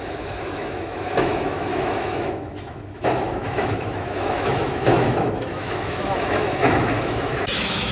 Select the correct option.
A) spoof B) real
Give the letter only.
A